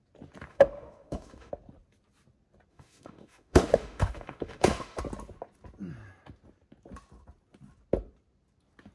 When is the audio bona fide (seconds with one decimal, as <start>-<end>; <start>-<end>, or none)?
0.0-0.5; 1.5-2.7; 5.0-8.9